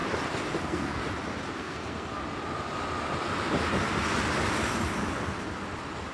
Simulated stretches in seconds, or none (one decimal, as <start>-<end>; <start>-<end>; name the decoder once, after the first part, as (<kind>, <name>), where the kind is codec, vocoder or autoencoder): 0.6-1.0 (codec, SNAC); 1.5-2.2